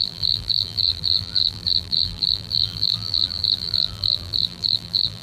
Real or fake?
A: fake